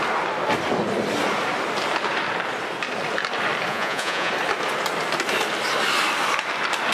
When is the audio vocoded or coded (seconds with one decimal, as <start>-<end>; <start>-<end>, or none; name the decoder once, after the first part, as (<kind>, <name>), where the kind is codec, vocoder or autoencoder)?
3.7-4.3 (vocoder, Vocos)